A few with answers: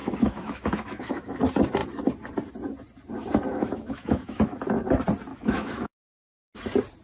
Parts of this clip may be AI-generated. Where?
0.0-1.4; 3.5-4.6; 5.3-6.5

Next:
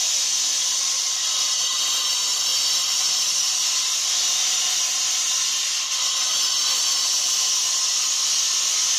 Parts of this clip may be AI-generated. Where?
none

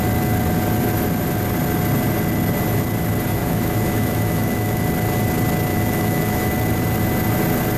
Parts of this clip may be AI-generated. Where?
3.4-4.8; 5.7-6.5

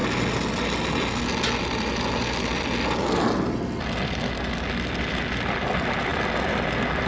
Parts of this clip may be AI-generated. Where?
none